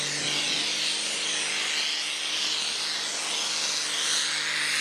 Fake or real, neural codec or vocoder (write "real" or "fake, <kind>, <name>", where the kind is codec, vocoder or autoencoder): real